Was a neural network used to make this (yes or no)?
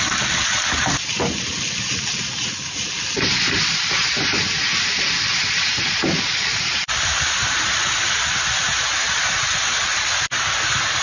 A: no